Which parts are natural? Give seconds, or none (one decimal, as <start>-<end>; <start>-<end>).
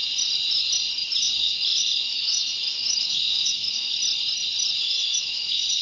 0.0-1.2; 3.9-4.8